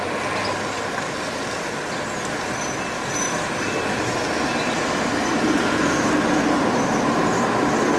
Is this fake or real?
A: real